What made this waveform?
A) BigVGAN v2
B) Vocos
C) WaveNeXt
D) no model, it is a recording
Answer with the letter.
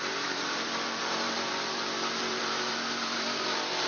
A